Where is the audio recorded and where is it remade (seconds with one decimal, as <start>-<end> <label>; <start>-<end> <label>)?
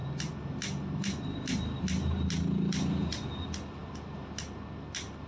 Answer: 0.0-5.3 recorded